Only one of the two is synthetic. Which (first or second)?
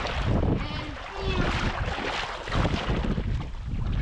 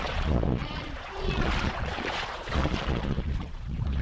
second